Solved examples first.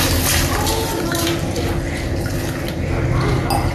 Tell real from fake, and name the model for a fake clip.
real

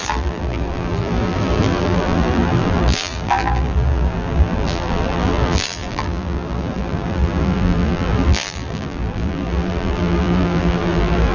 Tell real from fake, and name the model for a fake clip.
fake, vocoder, BigVGAN v2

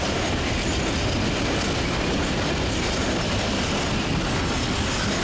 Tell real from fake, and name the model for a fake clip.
real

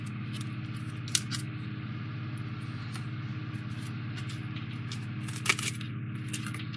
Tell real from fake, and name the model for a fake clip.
real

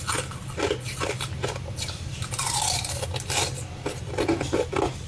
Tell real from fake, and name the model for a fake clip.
real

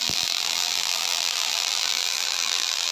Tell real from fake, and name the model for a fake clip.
fake, vocoder, BigVGAN v2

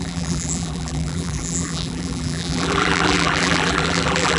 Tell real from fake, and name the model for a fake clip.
fake, vocoder, BigVGAN v2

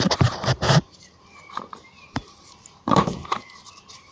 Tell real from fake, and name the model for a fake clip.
fake, vocoder, BigVGAN v2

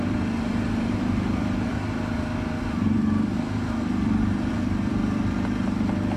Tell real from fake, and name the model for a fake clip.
fake, vocoder, BigVGAN v2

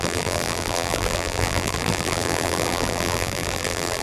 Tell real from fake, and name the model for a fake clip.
fake, vocoder, BigVGAN v2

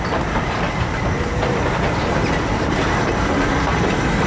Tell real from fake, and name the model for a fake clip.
fake, vocoder, BigVGAN v2